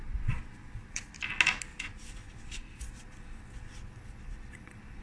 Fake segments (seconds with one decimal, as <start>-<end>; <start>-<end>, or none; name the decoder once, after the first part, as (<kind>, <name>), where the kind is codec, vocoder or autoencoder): 0.0-1.1 (vocoder, Vocos); 1.7-5.0